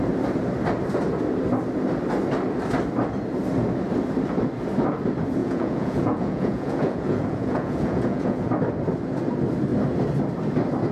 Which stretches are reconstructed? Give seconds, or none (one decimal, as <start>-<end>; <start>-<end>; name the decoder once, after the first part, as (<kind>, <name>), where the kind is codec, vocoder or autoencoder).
5.4-8.5 (vocoder, Vocos)